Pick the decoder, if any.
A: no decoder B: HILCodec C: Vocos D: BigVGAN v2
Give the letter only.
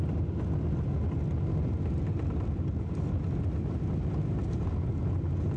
A